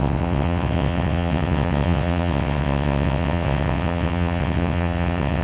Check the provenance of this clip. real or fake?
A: fake